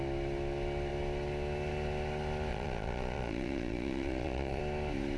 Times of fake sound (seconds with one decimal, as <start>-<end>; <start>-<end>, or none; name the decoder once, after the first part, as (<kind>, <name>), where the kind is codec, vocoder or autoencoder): 2.5-4.6 (vocoder, Vocos)